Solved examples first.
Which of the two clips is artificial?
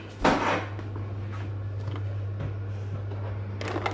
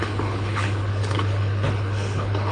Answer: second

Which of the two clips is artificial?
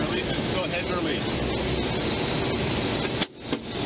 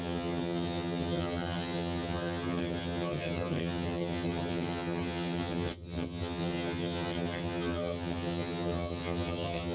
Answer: second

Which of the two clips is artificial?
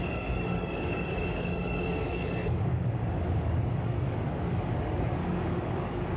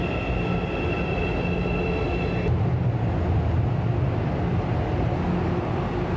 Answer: first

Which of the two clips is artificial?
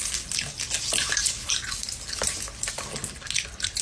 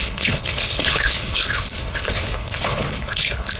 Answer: second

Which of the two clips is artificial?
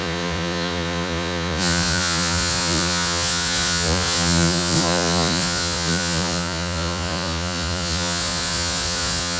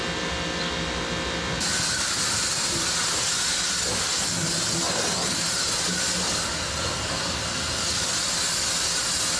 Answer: first